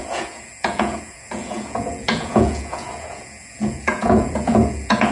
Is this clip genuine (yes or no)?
no